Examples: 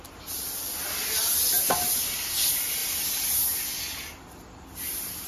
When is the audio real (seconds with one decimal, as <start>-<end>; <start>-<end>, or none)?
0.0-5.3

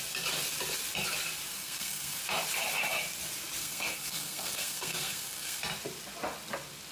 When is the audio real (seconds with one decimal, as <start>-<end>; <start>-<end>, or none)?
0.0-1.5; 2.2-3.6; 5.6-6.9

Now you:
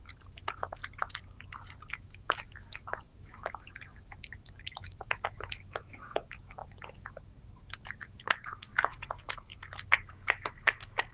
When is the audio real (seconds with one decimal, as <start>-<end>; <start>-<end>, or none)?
0.8-1.9

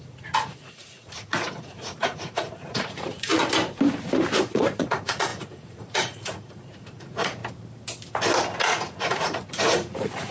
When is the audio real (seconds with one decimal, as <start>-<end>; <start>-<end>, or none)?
3.3-4.4; 7.4-8.6